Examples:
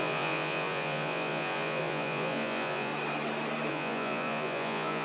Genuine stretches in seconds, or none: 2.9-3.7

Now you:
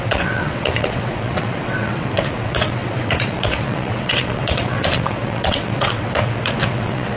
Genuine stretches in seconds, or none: none

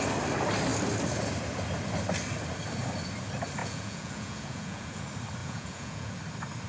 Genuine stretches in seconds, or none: 0.0-3.6; 5.0-5.4; 6.2-6.7